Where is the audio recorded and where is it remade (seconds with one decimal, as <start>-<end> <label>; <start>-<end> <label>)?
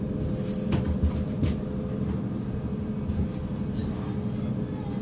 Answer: 0.0-5.0 recorded